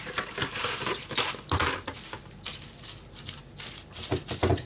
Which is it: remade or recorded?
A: recorded